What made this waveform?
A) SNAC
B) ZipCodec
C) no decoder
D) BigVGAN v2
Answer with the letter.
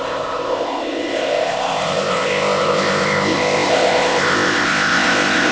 B